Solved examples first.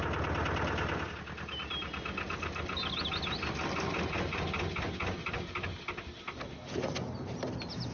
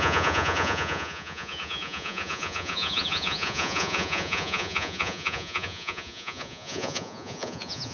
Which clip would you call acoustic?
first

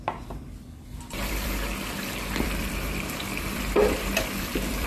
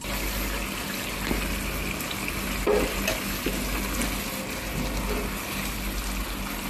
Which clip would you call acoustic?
second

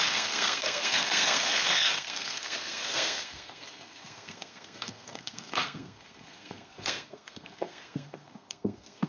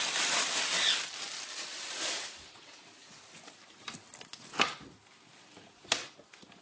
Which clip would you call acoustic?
second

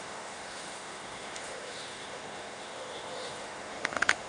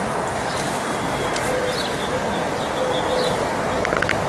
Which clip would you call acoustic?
second